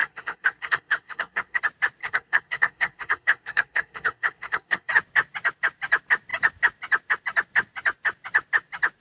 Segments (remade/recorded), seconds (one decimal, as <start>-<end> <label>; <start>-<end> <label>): 0.0-1.6 remade; 1.6-2.0 recorded; 2.0-4.9 remade; 4.9-9.0 recorded